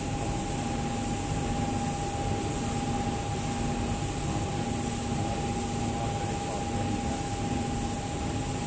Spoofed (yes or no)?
no